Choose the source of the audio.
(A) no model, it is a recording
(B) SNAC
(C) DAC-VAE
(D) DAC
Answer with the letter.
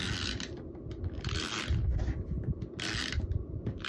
A